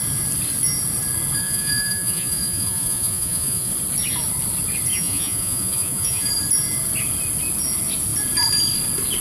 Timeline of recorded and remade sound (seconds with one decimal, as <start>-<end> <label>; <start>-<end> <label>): 0.0-1.4 recorded; 1.4-3.7 remade; 3.7-4.9 recorded; 4.9-6.3 remade; 6.3-9.2 recorded